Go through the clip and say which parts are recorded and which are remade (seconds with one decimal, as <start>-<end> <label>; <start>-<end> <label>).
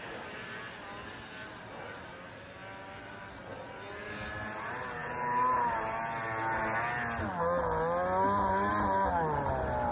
0.0-9.9 recorded